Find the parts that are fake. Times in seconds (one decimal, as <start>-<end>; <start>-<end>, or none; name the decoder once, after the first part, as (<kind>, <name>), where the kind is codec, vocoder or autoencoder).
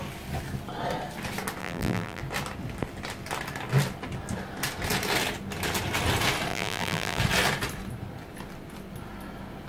1.6-2.2 (vocoder, BigVGAN v2); 6.5-7.2